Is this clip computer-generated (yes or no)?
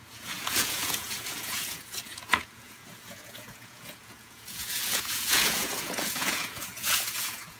yes